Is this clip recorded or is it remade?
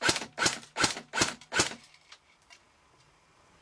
remade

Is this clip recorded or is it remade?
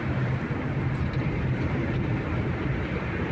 remade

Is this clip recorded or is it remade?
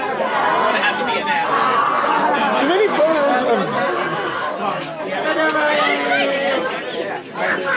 recorded